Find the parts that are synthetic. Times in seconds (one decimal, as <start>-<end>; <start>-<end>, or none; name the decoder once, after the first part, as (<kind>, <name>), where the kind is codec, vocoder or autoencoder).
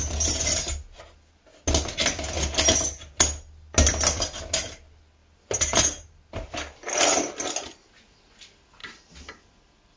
none